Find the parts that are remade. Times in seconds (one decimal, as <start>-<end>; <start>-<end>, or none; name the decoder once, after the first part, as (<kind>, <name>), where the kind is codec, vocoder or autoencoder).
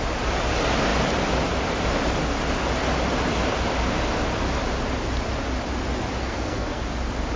6.2-6.8 (codec, SNAC)